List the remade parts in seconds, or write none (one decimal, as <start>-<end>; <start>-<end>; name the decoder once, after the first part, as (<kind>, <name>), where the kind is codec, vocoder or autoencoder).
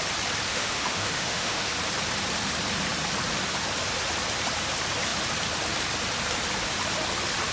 0.5-1.7 (autoencoder, DAC-VAE)